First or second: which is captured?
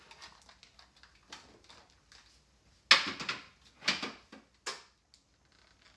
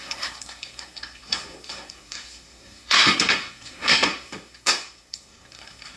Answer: first